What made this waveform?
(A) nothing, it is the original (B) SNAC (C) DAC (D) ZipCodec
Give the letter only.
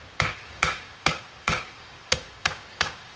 C